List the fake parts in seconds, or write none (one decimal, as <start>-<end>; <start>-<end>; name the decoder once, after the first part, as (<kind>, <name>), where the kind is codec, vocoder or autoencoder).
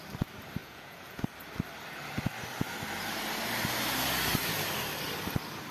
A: 0.6-1.2 (vocoder, Vocos)